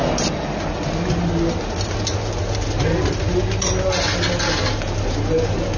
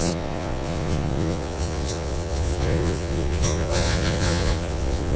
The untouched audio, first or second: first